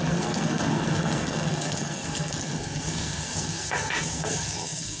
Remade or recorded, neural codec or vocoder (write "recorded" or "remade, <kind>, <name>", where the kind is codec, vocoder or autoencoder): remade, codec, SNAC